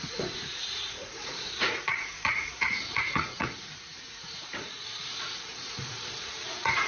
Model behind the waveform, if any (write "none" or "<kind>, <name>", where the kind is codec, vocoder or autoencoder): vocoder, Vocos